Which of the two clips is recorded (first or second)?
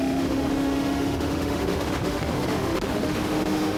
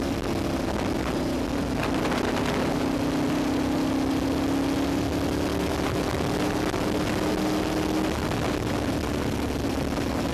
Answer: second